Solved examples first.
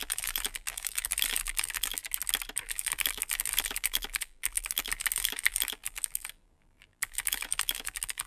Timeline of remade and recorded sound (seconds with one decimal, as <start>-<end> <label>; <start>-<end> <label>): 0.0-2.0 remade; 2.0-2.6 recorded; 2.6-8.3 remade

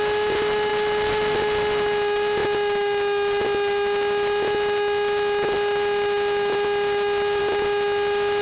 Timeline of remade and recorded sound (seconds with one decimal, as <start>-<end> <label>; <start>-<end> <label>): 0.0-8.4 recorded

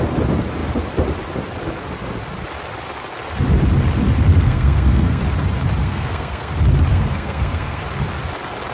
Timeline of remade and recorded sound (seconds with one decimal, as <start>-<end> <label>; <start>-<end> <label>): 0.0-4.3 recorded; 4.3-5.2 remade; 5.2-5.8 recorded; 5.8-6.5 remade; 6.5-6.9 recorded; 6.9-7.8 remade; 7.8-8.7 recorded

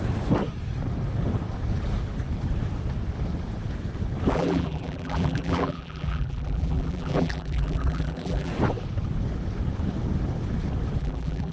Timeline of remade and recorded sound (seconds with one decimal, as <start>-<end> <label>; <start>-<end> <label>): 0.0-4.3 recorded; 4.3-8.5 remade; 8.5-11.0 recorded; 11.0-11.5 remade

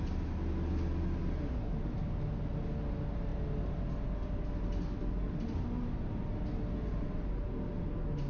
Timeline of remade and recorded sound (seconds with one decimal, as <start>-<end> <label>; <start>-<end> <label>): 0.0-8.3 recorded